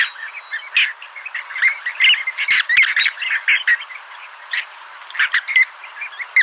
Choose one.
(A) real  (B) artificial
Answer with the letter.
A